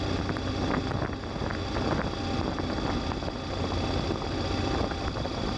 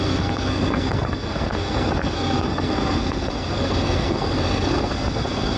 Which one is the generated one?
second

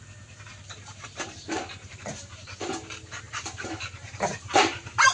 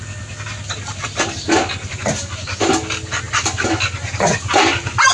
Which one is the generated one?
first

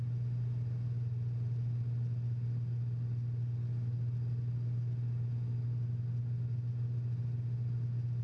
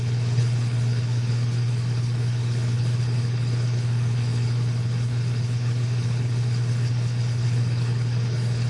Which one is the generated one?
second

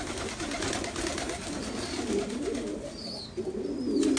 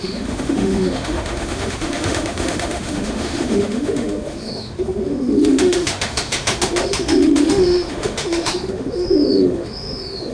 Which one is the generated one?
second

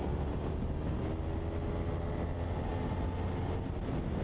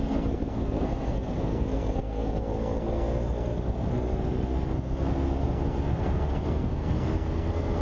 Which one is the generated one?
second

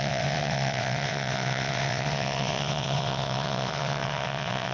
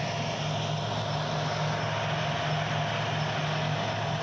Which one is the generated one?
first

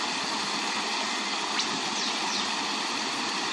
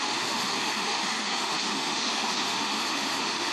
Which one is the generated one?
second